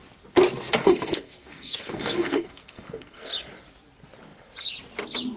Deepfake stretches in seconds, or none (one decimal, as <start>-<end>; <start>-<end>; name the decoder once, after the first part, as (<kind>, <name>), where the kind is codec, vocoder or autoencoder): 0.8-3.3 (codec, SNAC)